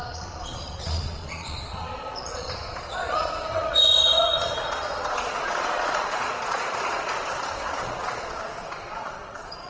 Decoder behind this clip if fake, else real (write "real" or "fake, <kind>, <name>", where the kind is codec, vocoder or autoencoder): fake, vocoder, Vocos